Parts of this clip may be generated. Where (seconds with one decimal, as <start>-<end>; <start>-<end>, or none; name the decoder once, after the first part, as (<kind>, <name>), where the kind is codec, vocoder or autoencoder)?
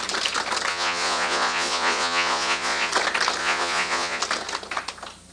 0.7-2.9 (vocoder, Vocos); 3.4-4.2